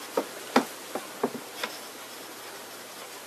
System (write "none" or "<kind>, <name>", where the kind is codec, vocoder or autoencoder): none